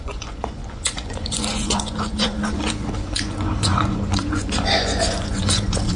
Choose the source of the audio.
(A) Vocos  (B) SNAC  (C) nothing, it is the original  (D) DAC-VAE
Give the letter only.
A